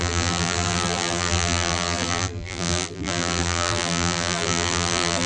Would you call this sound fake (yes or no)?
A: yes